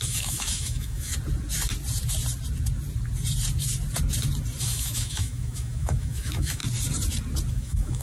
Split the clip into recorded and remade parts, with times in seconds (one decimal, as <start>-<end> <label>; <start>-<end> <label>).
0.0-1.1 remade; 1.1-4.6 recorded; 4.6-6.6 remade; 6.6-7.5 recorded; 7.5-8.0 remade